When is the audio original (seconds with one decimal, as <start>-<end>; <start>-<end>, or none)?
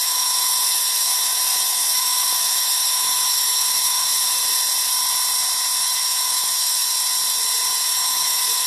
4.4-5.8; 6.9-7.8